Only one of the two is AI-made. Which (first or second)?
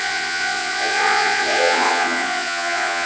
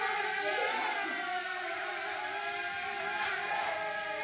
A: first